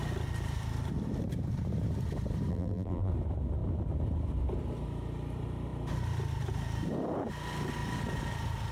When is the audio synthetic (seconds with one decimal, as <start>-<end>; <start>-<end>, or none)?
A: 2.5-3.1